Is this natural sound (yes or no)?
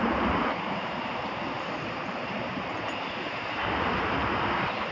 no